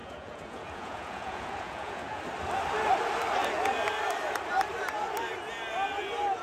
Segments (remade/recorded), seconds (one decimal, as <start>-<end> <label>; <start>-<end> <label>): 0.0-2.2 remade; 2.2-6.4 recorded